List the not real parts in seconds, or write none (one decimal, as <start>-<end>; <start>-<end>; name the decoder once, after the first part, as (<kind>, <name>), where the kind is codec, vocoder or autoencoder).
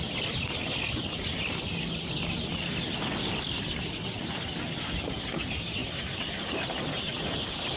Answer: 0.6-4.3 (vocoder, BigVGAN v2); 5.8-6.3